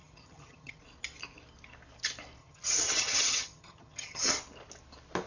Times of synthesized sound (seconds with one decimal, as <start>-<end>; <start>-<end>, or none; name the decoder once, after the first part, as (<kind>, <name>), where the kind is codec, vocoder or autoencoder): 0.0-0.8 (vocoder, HiFi-GAN); 2.4-4.3